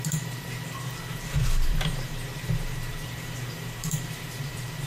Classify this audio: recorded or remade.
remade